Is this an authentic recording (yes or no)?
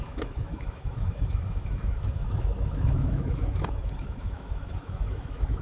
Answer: no